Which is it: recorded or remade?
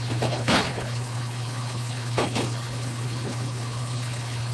remade